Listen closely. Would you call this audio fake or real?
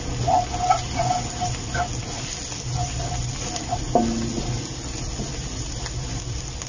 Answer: real